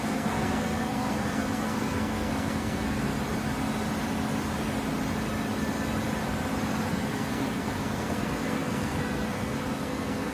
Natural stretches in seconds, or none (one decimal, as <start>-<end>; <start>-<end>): 3.1-6.9